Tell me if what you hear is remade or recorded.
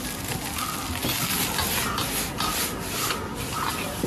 recorded